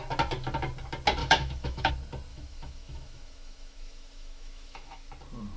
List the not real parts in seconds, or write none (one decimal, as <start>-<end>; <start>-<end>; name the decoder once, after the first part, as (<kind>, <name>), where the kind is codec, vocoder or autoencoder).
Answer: 1.2-1.9 (autoencoder, DAC-VAE); 2.3-5.1